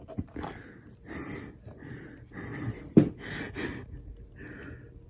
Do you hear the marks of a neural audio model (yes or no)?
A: no